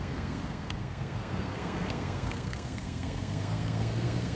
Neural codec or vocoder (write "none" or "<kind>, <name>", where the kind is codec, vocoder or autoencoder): codec, SNAC